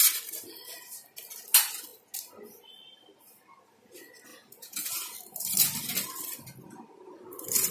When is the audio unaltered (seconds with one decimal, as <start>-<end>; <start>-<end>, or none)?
0.0-4.3; 4.9-7.7